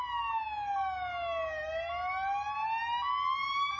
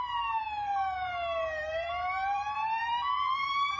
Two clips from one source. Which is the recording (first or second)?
first